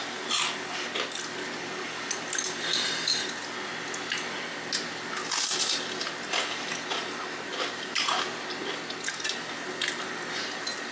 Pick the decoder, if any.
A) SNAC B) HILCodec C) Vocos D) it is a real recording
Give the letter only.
D